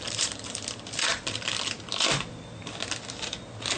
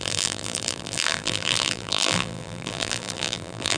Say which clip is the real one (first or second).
first